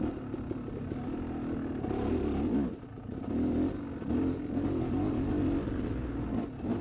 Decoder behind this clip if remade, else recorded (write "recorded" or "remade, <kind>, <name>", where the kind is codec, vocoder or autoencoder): recorded